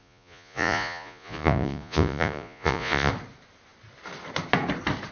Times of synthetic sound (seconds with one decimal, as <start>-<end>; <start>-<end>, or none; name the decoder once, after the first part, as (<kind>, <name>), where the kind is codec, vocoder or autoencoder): 0.0-3.1 (vocoder, Vocos)